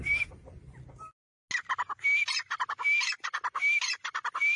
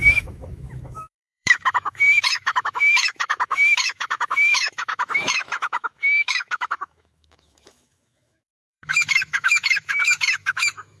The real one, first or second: first